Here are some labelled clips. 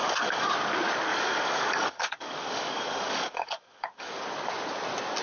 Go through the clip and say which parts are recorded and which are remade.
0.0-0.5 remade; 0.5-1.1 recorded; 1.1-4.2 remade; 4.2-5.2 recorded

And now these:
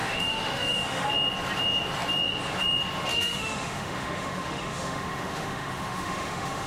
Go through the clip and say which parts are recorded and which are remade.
0.0-1.1 remade; 1.1-3.1 recorded; 3.1-6.7 remade

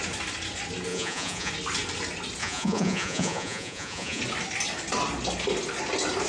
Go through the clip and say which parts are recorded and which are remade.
0.0-0.9 recorded; 0.9-1.5 remade; 1.5-2.4 recorded; 2.4-4.2 remade; 4.2-6.3 recorded

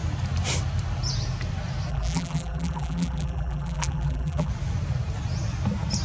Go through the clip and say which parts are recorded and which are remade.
0.0-1.9 recorded; 1.9-4.5 remade; 4.5-6.0 recorded

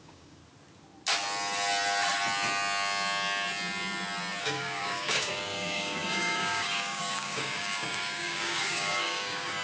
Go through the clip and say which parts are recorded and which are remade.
0.0-0.4 remade; 0.4-4.4 recorded; 4.4-9.6 remade

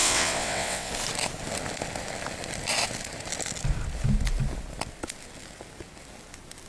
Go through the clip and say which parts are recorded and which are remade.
0.0-0.9 remade; 0.9-6.7 recorded

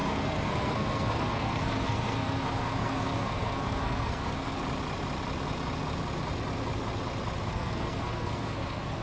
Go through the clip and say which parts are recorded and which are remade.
0.0-4.6 remade; 4.6-7.5 recorded; 7.5-9.0 remade